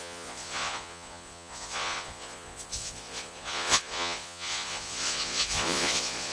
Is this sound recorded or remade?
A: remade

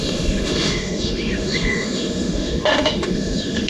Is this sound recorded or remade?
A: remade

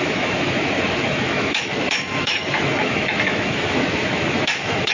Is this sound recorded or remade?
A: remade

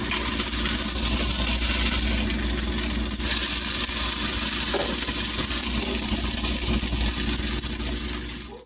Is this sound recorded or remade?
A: recorded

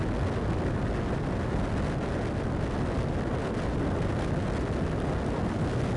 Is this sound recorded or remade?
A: recorded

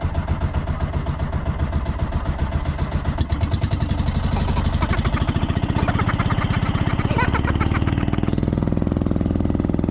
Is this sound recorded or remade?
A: recorded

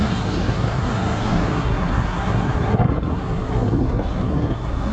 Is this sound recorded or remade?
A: remade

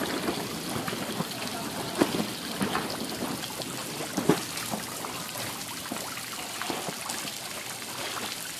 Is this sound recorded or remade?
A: recorded